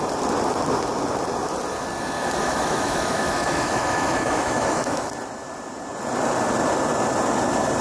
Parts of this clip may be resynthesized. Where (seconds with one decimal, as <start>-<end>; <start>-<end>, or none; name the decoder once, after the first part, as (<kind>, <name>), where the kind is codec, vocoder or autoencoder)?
2.4-5.1 (autoencoder, DAC-VAE)